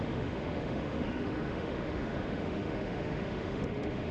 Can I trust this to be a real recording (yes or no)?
no